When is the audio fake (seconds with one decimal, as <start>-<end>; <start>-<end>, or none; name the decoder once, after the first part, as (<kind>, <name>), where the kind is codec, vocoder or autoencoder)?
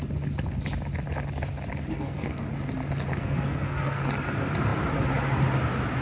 1.9-2.5 (codec, SNAC); 3.1-4.1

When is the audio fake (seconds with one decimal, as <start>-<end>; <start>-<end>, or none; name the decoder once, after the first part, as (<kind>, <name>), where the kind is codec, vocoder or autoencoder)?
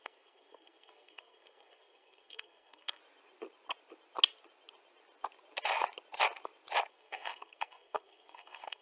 0.0-3.0 (codec, SNAC); 6.9-8.8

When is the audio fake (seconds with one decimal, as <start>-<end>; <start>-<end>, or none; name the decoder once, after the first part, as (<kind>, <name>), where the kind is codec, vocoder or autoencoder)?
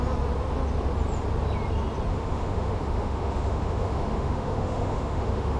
2.1-5.6 (autoencoder, DAC-VAE)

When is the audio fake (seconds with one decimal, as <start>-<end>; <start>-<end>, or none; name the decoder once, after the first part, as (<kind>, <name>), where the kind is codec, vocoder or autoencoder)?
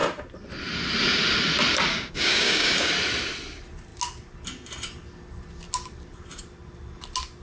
1.9-2.9 (codec, DAC)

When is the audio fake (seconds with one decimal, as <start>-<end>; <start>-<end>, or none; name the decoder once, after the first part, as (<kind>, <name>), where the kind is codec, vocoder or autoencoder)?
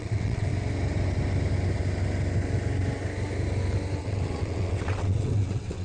0.0-0.5 (vocoder, WaveNeXt); 4.0-5.8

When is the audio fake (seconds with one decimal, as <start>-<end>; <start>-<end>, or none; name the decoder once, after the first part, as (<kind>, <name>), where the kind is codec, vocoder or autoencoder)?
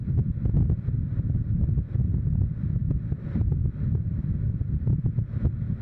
none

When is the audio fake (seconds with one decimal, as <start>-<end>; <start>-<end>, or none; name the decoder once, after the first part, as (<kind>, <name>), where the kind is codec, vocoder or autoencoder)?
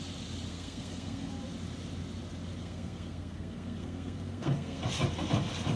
0.5-1.3 (codec, SNAC); 2.6-4.8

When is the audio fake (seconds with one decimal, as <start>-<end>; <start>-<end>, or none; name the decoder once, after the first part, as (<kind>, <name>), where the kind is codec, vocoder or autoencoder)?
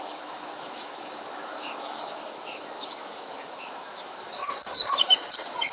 0.0-5.7 (autoencoder, DAC-VAE)